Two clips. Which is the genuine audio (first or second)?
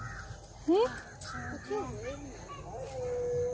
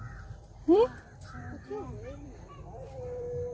first